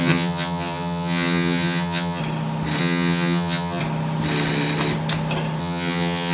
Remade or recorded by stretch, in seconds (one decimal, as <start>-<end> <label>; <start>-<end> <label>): 0.0-2.2 remade; 2.2-2.8 recorded; 2.8-3.8 remade; 3.8-5.6 recorded; 5.6-6.3 remade